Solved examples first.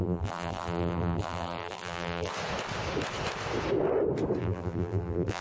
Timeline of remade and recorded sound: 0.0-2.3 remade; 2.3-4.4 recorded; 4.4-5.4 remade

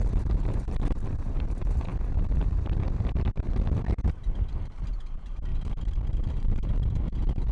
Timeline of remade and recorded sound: 0.0-1.9 remade; 1.9-4.5 recorded; 4.5-5.5 remade; 5.5-6.1 recorded; 6.1-7.5 remade

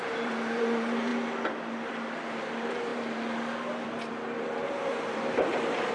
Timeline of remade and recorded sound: 0.0-1.1 remade; 1.1-2.4 recorded; 2.4-5.9 remade

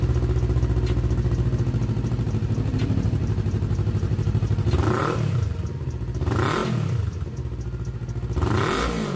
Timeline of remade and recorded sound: 0.0-2.7 recorded; 2.7-5.0 remade; 5.0-9.2 recorded

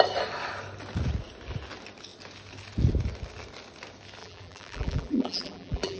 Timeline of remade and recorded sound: 0.0-4.2 recorded; 4.2-6.0 remade

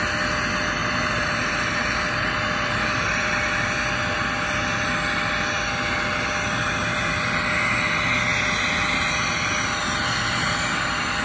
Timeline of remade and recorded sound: 0.0-0.8 recorded; 0.8-3.3 remade; 3.3-11.2 recorded